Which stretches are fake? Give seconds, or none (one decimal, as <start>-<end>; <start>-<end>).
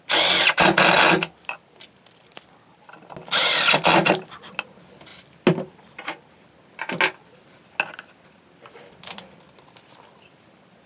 none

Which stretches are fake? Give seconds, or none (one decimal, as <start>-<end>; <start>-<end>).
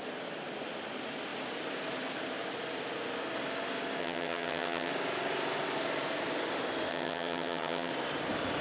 4.0-4.9; 6.9-7.9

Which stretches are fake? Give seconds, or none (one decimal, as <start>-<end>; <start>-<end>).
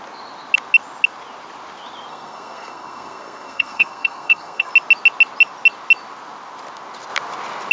2.1-4.7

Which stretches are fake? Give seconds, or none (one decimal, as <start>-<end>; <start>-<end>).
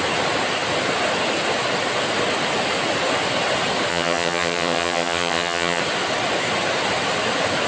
3.9-5.8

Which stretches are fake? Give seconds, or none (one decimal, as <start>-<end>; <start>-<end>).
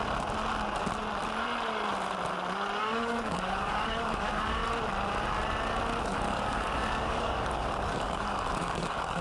2.8-4.6; 6.0-9.2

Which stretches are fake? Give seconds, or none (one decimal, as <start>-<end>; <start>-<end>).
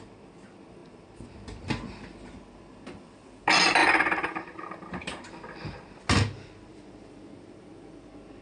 3.8-5.3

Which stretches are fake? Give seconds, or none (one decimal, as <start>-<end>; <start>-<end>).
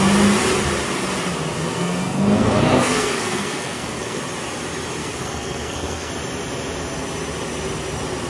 1.6-4.2; 5.0-6.1